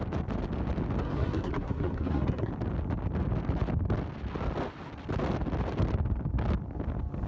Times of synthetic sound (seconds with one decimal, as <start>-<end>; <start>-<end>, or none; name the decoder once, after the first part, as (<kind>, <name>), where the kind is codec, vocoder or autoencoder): 1.0-2.5 (codec, SNAC)